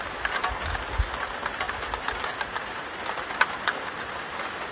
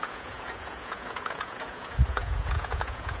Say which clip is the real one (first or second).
first